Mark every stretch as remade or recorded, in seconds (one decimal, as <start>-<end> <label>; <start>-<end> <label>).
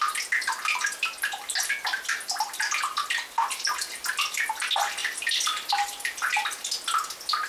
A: 0.0-5.0 recorded; 5.0-5.7 remade; 5.7-7.5 recorded